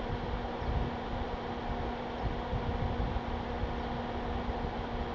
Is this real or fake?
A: real